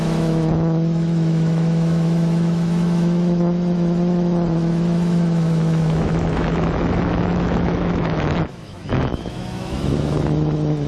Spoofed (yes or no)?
yes